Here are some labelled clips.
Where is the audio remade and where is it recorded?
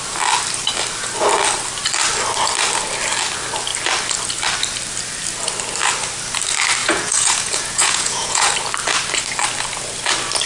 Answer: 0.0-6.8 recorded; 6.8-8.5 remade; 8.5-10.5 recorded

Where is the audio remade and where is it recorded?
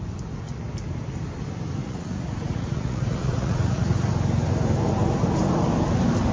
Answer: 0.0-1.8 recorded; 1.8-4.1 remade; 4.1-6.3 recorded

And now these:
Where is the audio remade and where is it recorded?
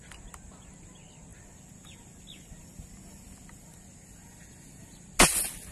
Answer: 0.0-5.7 recorded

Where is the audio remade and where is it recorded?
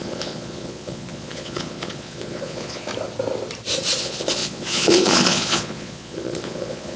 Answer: 0.0-2.9 remade; 2.9-4.0 recorded; 4.0-7.0 remade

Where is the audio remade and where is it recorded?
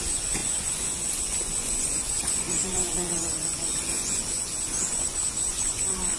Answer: 0.0-6.2 remade